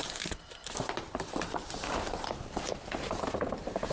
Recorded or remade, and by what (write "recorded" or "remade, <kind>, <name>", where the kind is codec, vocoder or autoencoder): remade, vocoder, BigVGAN v2